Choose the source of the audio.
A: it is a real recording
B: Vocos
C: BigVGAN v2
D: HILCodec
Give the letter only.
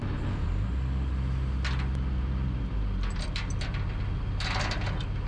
A